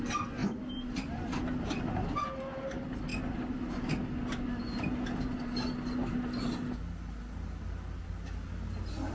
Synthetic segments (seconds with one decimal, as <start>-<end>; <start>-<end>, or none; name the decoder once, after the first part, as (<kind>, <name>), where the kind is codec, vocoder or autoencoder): none

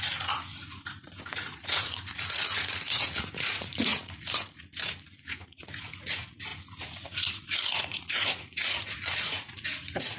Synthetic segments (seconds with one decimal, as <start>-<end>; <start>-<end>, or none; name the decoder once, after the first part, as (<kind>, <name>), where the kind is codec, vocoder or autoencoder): 0.0-10.2 (vocoder, Vocos)

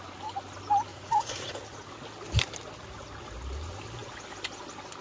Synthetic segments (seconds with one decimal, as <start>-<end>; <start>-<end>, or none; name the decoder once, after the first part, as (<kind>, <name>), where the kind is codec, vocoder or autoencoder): 0.9-1.9 (vocoder, Vocos)

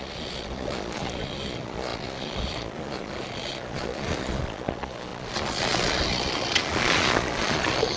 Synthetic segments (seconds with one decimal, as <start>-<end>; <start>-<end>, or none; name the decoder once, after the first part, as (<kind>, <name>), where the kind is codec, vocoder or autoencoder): 0.0-8.0 (vocoder, Vocos)

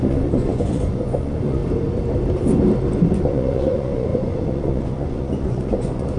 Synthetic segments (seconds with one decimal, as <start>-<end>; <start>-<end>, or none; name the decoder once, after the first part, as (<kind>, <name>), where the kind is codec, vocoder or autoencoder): 0.0-1.6 (vocoder, Vocos); 3.1-6.2

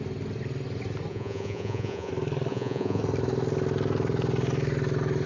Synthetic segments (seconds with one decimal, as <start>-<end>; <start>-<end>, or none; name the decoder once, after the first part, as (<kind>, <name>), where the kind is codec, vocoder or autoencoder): 1.1-2.1 (vocoder, Vocos); 2.5-3.0

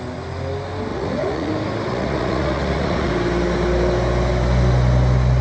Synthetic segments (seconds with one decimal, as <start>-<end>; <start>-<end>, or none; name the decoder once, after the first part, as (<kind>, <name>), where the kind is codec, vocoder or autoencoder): 0.9-1.5 (vocoder, Vocos); 1.9-3.1

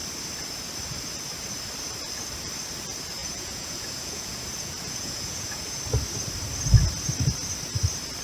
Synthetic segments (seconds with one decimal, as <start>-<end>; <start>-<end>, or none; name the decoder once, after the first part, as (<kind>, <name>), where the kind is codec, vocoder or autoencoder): 3.2-5.8 (vocoder, Vocos)